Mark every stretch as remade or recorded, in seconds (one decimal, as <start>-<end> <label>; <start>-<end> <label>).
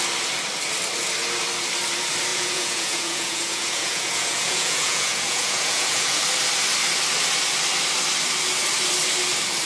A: 0.0-2.3 recorded; 2.3-6.2 remade; 6.2-9.7 recorded